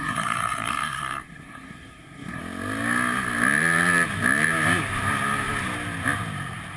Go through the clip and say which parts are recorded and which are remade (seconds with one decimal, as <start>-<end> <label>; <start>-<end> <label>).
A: 0.0-2.4 remade; 2.4-6.8 recorded